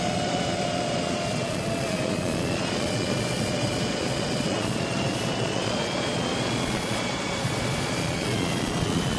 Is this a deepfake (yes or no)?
yes